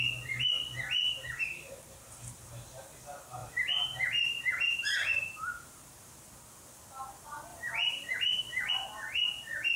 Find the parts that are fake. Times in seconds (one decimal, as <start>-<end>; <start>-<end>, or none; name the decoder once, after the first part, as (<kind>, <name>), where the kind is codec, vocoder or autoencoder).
1.1-2.8 (vocoder, BigVGAN v2); 3.4-6.2; 7.5-8.7